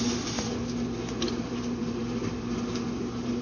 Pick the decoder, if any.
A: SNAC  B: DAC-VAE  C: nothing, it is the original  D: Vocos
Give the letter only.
C